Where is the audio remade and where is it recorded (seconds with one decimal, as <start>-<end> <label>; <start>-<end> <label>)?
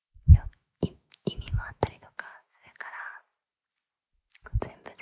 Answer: 0.0-3.0 remade; 3.0-5.0 recorded